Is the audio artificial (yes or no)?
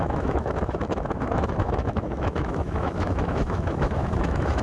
yes